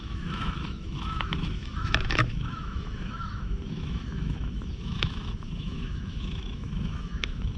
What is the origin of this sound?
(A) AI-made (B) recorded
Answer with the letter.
A